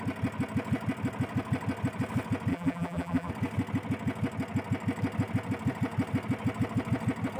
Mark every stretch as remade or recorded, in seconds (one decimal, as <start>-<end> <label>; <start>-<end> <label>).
0.0-2.5 recorded; 2.5-3.3 remade; 3.3-7.4 recorded